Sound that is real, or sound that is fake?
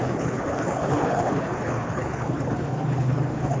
fake